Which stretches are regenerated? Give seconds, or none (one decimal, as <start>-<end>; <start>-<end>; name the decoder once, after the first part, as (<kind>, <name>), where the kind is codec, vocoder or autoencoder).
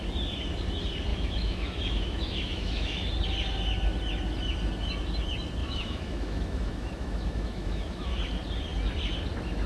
1.1-3.1 (autoencoder, DAC-VAE); 5.6-8.1